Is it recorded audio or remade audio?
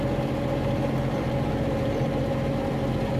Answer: remade